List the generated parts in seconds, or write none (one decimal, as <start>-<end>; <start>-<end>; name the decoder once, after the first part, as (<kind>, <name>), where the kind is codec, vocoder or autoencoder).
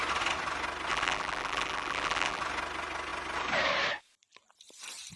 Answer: 0.9-2.4 (vocoder, BigVGAN v2)